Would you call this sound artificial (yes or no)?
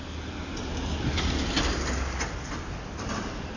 no